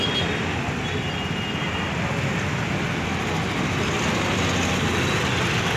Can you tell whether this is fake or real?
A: real